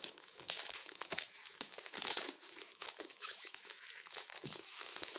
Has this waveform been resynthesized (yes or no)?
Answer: yes